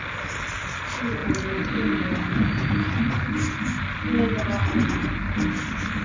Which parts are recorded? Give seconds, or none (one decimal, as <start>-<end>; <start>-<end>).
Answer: 0.0-6.0